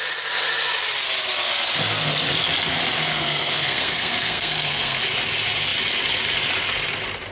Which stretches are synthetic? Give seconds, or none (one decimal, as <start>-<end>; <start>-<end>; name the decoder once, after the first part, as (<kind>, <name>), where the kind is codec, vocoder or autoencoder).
3.1-5.0 (codec, SNAC)